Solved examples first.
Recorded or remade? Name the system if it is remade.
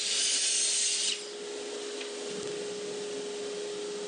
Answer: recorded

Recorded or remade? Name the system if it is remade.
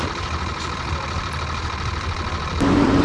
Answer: remade, vocoder, BigVGAN v2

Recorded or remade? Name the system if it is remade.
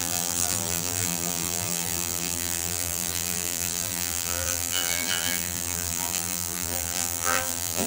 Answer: remade, vocoder, BigVGAN v2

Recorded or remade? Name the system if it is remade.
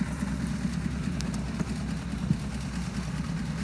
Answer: recorded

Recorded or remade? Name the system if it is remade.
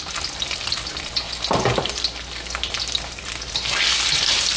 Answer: remade, vocoder, BigVGAN v2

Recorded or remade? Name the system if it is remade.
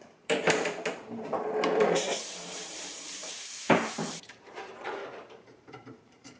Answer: remade, vocoder, BigVGAN v2